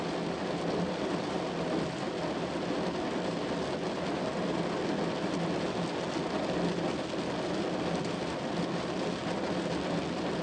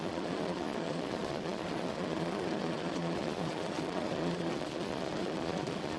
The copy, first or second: second